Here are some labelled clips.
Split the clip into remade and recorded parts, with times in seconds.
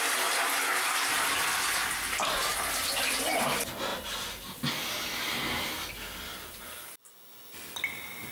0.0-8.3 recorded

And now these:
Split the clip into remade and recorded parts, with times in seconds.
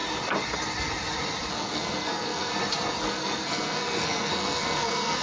0.0-1.5 recorded; 1.5-2.5 remade; 2.5-3.0 recorded; 3.0-5.2 remade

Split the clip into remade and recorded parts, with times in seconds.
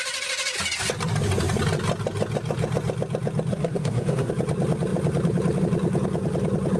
0.0-3.5 recorded; 3.5-4.3 remade; 4.3-6.8 recorded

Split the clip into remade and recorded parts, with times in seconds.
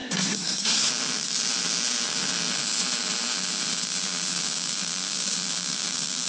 0.0-0.9 remade; 0.9-6.3 recorded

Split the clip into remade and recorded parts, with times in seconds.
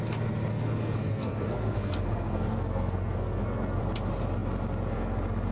0.0-0.5 recorded; 0.5-3.8 remade; 3.8-5.5 recorded